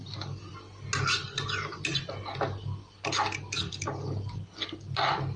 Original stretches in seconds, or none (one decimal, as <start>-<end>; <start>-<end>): 0.0-5.4